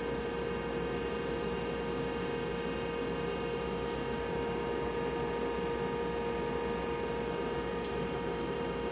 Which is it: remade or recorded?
recorded